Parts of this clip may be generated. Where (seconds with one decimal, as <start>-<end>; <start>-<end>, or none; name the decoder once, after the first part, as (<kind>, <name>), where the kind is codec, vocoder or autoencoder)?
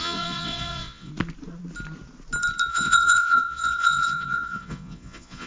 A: 0.0-1.1 (vocoder, Vocos); 2.7-5.5